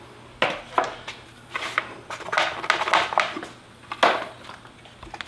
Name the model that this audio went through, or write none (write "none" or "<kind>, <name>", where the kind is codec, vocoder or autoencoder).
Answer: none